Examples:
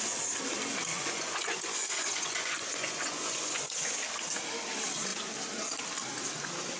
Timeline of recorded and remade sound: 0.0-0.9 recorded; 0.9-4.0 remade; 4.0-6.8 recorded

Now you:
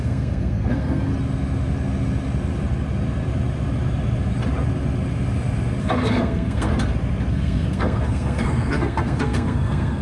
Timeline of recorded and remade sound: 0.0-1.1 remade; 1.1-5.8 recorded; 5.8-6.7 remade; 6.7-7.3 recorded; 7.3-10.0 remade